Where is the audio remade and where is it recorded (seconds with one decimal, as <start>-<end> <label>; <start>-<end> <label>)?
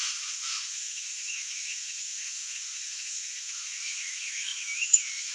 0.0-5.3 remade